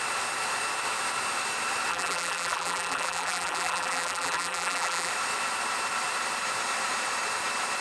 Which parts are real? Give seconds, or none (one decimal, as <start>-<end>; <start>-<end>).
0.0-1.9; 5.1-7.8